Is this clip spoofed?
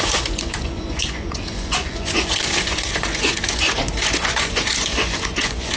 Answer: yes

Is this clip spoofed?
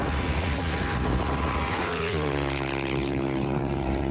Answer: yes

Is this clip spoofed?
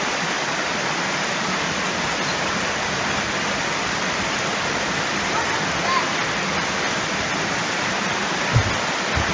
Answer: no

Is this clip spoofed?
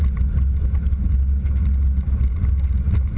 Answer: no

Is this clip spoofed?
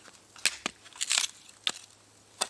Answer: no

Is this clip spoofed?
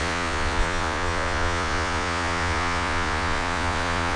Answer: yes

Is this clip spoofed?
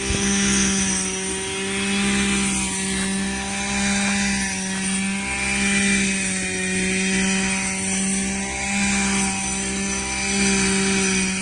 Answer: no